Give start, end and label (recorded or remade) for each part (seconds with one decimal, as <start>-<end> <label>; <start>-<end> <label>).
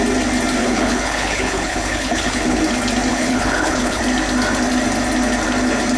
0.0-0.6 recorded; 0.6-2.6 remade; 2.6-3.1 recorded; 3.1-4.0 remade; 4.0-6.0 recorded